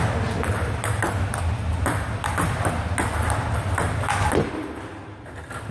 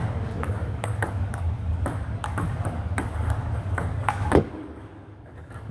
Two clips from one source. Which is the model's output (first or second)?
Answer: second